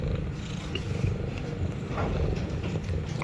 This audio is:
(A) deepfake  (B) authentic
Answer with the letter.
A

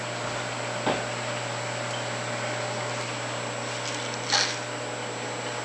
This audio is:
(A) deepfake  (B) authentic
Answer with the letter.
B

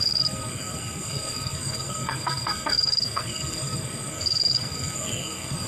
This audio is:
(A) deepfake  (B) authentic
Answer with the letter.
A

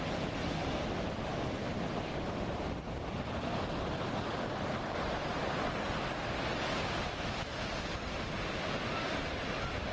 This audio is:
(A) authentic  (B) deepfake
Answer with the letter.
A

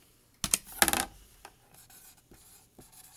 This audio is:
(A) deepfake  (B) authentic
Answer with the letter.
B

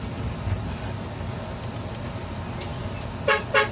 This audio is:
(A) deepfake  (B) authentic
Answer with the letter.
B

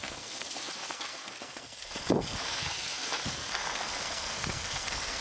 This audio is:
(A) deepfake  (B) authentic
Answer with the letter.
A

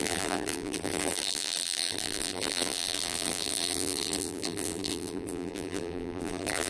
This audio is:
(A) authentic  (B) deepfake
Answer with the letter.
B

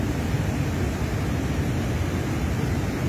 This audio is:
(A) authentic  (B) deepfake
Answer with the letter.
A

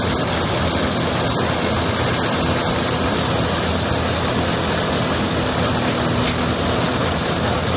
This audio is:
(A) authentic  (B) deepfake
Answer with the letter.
A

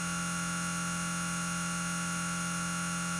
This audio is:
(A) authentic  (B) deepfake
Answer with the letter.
A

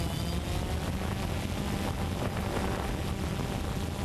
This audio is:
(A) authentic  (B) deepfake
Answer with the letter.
A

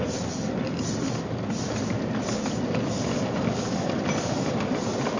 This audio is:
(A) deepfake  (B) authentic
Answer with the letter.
B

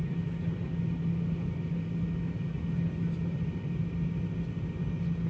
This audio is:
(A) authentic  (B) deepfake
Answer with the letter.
A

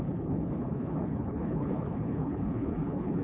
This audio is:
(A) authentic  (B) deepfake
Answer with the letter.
B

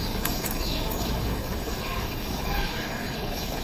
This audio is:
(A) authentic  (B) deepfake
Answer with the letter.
B